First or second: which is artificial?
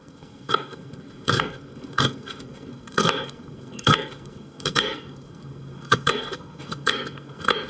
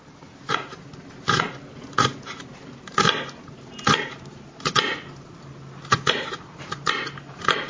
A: first